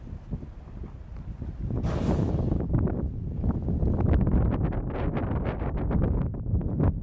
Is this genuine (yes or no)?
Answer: yes